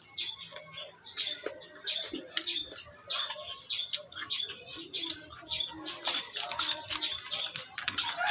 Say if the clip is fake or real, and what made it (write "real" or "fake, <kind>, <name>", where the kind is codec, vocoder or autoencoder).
real